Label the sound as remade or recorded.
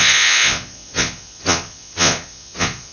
remade